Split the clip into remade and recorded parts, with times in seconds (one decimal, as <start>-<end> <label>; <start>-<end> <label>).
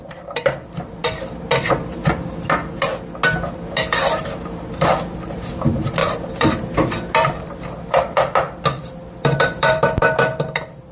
0.0-1.0 remade; 1.0-4.0 recorded; 4.0-10.9 remade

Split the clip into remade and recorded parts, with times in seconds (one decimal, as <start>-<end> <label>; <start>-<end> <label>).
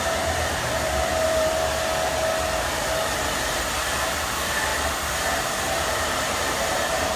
0.0-1.1 remade; 1.1-4.0 recorded; 4.0-4.7 remade; 4.7-5.9 recorded; 5.9-7.2 remade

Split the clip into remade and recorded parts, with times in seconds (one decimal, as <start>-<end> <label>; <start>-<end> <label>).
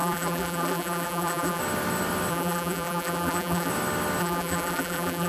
0.0-1.6 remade; 1.6-2.3 recorded; 2.3-3.7 remade; 3.7-4.2 recorded; 4.2-5.3 remade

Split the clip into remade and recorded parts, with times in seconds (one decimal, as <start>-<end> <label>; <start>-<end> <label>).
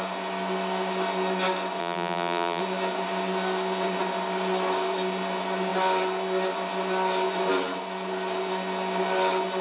0.0-1.8 recorded; 1.8-2.6 remade; 2.6-9.6 recorded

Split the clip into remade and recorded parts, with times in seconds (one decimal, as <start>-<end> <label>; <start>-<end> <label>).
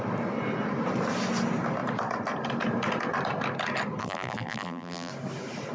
0.0-4.0 recorded; 4.0-5.1 remade; 5.1-5.7 recorded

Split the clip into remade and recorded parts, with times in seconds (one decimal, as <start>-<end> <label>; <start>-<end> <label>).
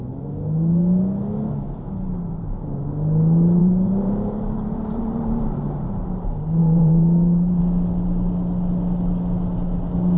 0.0-3.6 recorded; 3.6-6.0 remade; 6.0-6.6 recorded; 6.6-7.6 remade; 7.6-10.2 recorded